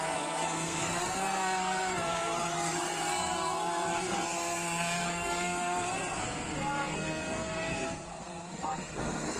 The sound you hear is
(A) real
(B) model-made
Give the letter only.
B